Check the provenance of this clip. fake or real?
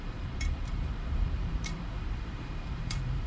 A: fake